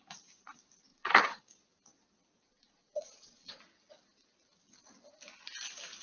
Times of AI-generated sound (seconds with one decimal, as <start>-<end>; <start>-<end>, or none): 0.9-1.4; 2.5-3.6